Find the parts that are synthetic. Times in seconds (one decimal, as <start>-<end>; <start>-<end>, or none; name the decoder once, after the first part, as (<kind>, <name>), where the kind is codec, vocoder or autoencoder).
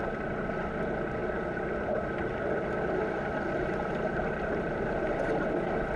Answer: 1.2-4.8 (vocoder, BigVGAN v2)